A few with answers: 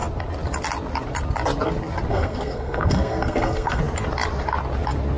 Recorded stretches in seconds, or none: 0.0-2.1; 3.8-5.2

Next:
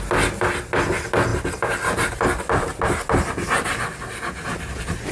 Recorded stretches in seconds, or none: 0.0-1.3; 2.8-5.1

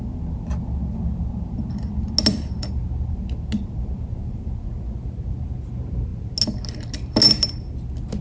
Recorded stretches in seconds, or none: 0.0-8.2

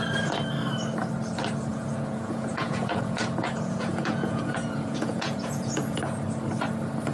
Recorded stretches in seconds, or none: 0.0-1.7; 6.0-7.1

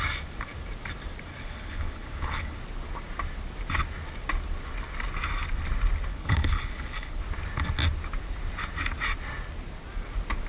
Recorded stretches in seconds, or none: 0.0-1.3; 2.6-6.1; 7.2-10.5